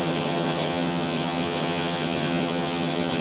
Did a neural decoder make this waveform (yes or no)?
yes